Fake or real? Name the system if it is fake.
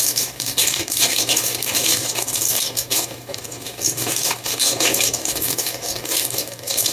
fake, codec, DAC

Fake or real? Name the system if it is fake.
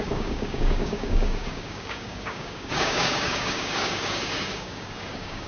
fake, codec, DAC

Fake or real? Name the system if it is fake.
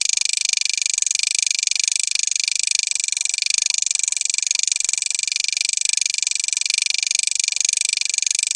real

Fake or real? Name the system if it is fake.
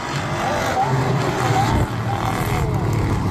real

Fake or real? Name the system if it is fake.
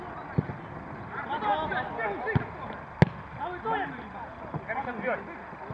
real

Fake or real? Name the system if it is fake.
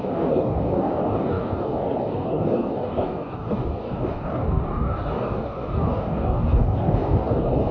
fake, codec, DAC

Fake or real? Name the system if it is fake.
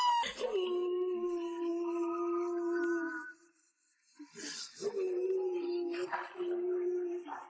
real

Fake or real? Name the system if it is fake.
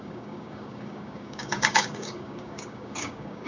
fake, codec, DAC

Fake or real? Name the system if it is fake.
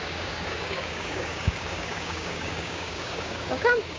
fake, codec, DAC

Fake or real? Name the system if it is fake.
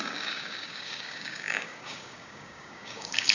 fake, codec, DAC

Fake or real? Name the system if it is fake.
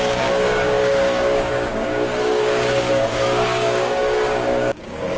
fake, codec, DAC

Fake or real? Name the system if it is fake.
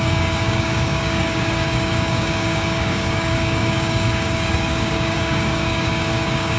fake, codec, DAC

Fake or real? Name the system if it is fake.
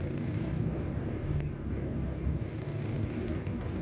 fake, codec, DAC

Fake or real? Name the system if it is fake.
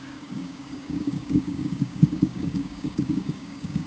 fake, codec, DAC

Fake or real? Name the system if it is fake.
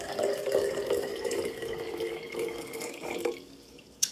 fake, codec, DAC